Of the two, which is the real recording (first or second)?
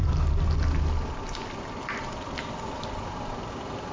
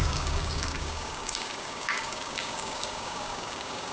first